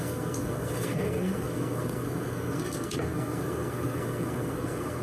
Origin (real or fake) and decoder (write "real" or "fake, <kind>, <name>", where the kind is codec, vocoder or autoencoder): fake, codec, SNAC